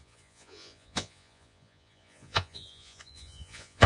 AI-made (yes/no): yes